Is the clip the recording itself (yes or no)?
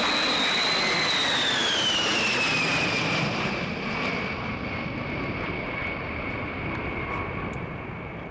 yes